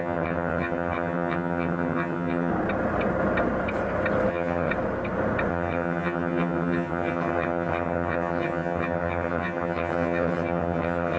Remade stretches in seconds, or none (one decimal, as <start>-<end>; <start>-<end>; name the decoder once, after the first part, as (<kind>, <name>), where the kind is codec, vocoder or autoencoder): 0.0-2.5 (vocoder, HiFi-GAN); 4.3-4.7; 5.5-11.2